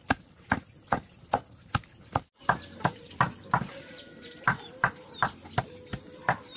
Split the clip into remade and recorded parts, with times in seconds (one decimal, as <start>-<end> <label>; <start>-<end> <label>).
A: 0.0-6.6 recorded